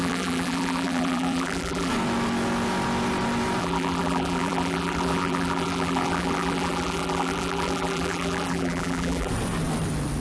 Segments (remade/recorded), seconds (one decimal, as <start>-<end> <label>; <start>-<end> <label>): 0.0-1.9 remade; 1.9-3.6 recorded; 3.6-9.3 remade; 9.3-10.2 recorded